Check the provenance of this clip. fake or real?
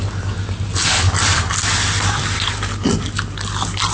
real